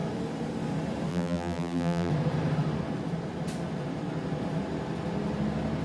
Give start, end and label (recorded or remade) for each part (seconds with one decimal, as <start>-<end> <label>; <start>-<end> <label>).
0.0-1.1 recorded; 1.1-2.1 remade; 2.1-5.8 recorded